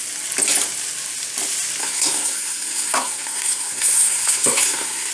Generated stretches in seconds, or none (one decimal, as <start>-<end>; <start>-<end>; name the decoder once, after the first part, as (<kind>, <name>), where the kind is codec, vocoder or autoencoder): 1.8-5.1 (codec, SNAC)